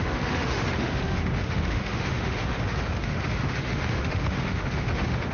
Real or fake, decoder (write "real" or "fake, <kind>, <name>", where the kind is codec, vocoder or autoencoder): fake, autoencoder, DAC-VAE